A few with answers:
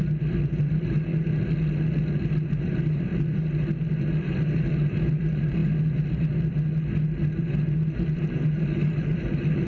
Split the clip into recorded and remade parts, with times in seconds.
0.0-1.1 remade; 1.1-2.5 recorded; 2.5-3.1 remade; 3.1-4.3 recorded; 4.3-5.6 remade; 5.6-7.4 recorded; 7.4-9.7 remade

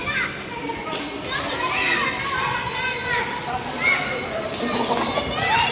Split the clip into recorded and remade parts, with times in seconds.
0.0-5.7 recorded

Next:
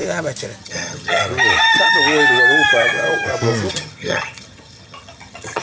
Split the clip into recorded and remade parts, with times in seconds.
0.0-0.6 recorded; 0.6-1.2 remade; 1.2-3.7 recorded; 3.7-5.6 remade